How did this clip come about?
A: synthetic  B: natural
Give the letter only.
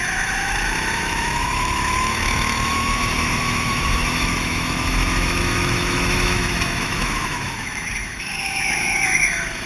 A